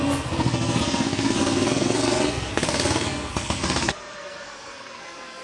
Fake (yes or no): yes